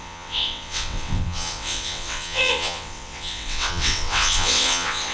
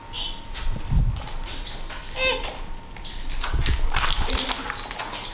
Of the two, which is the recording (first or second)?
second